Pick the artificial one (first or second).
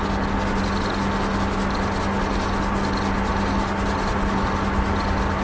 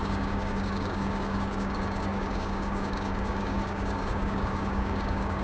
second